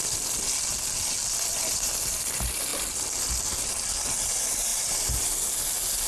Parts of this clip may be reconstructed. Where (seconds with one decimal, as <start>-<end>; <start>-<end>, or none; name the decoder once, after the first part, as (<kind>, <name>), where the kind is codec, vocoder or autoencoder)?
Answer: none